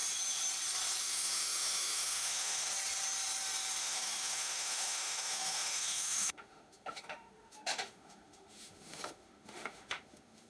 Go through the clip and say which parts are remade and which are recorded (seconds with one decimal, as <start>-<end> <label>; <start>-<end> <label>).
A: 0.0-1.0 recorded; 1.0-2.7 remade; 2.7-3.8 recorded; 3.8-10.5 remade